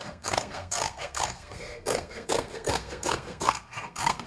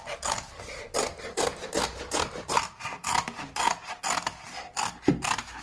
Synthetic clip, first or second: first